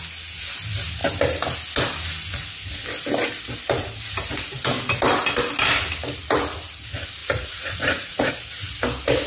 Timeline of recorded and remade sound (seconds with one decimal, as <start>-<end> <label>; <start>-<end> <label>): 0.0-7.2 recorded; 7.2-8.3 remade; 8.3-9.3 recorded